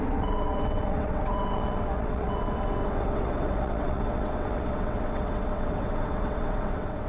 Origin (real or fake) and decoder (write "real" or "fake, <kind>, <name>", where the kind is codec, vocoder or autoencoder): fake, vocoder, WaveNeXt